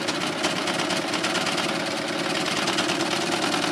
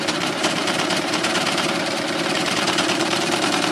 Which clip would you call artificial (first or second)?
second